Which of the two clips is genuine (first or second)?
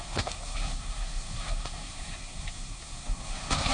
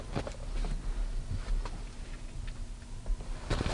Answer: second